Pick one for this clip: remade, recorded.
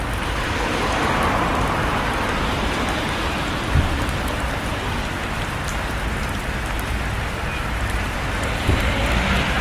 recorded